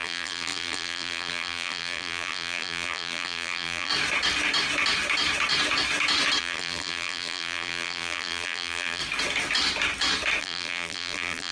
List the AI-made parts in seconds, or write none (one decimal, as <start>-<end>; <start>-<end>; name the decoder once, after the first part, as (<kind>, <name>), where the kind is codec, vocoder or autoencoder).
0.0-3.9 (vocoder, BigVGAN v2); 6.4-9.0; 10.4-11.5